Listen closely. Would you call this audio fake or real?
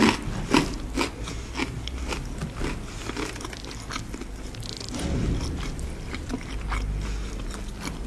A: real